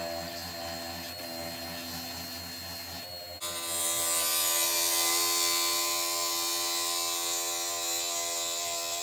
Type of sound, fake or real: real